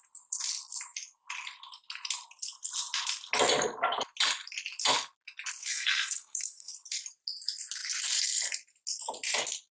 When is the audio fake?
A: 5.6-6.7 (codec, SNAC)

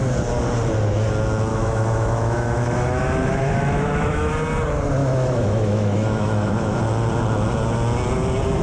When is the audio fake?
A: 1.5-4.3 (autoencoder, DAC-VAE); 5.0-6.8

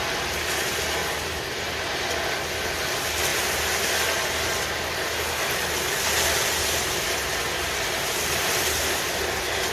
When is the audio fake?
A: 1.0-2.1 (vocoder, BigVGAN v2); 3.3-3.8; 6.6-7.2